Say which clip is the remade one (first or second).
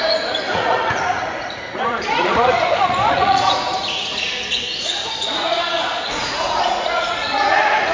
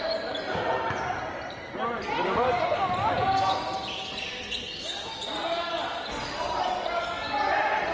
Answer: first